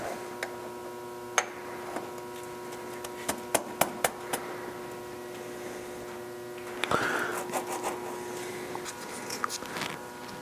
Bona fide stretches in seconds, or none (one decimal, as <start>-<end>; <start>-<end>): 0.0-10.4